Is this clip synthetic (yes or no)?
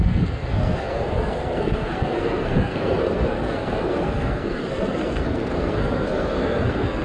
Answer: yes